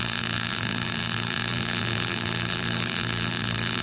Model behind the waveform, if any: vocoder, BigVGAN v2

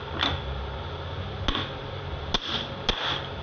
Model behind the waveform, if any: none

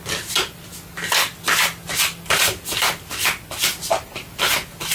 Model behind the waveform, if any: none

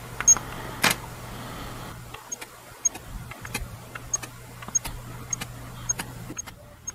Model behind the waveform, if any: none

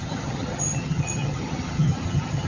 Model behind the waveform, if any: vocoder, HiFi-GAN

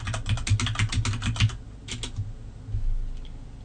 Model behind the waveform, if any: none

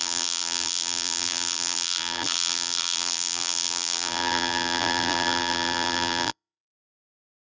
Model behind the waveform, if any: vocoder, BigVGAN v2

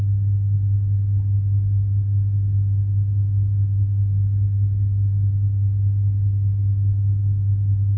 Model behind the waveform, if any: none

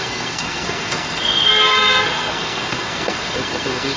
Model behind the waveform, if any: codec, SNAC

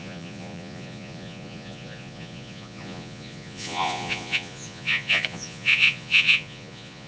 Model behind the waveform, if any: vocoder, Vocos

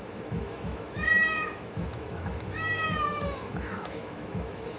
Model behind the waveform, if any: autoencoder, DAC-VAE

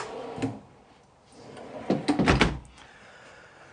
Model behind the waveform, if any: none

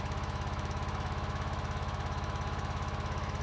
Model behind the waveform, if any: autoencoder, DAC-VAE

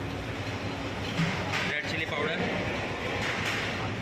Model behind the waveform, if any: none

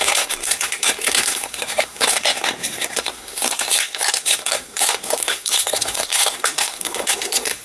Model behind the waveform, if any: codec, SNAC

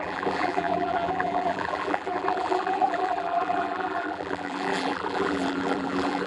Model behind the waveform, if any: vocoder, BigVGAN v2